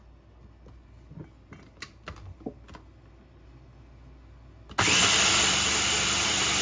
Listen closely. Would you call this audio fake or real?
real